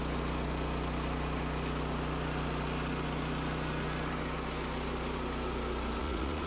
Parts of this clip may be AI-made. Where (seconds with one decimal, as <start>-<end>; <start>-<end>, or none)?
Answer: 6.0-6.5